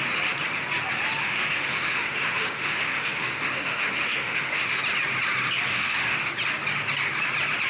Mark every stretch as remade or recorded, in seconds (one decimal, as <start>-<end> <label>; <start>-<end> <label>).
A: 0.0-1.2 recorded; 1.2-4.8 remade; 4.8-5.7 recorded; 5.7-6.3 remade; 6.3-7.7 recorded